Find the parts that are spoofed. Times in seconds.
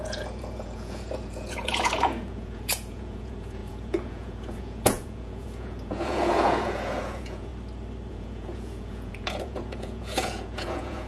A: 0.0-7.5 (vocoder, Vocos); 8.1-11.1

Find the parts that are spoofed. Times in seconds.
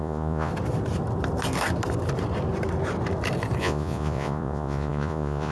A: 0.0-0.5 (vocoder, Vocos); 3.6-5.5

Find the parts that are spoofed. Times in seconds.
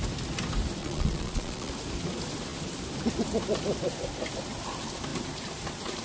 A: 0.8-1.7 (vocoder, Vocos)